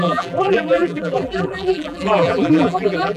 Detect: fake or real fake